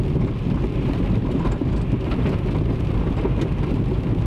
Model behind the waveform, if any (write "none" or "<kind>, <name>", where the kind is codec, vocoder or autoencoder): none